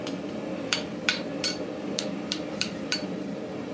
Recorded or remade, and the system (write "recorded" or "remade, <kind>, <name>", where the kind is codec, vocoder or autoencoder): remade, vocoder, BigVGAN v2